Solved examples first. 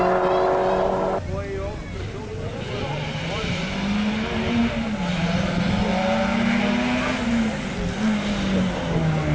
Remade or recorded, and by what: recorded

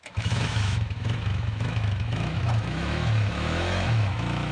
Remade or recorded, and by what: remade, autoencoder, DAC-VAE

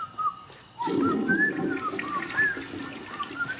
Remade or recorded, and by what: recorded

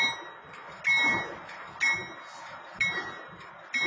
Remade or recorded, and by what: recorded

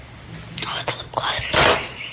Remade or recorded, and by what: recorded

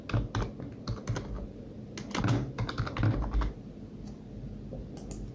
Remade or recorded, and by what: recorded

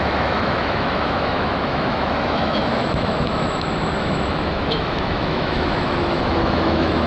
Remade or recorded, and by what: remade, autoencoder, DAC-VAE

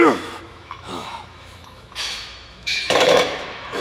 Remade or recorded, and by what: remade, autoencoder, DAC-VAE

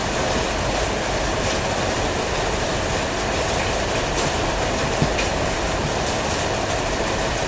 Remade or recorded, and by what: recorded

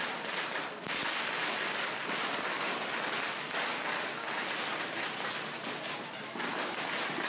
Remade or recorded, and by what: recorded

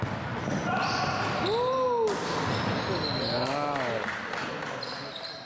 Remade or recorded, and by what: recorded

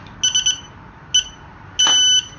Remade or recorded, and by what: recorded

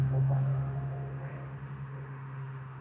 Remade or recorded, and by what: remade, autoencoder, DAC-VAE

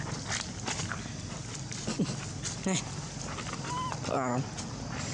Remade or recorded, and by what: recorded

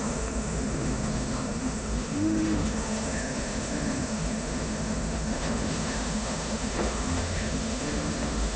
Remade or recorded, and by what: remade, autoencoder, DAC-VAE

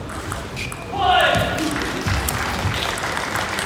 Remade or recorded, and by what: recorded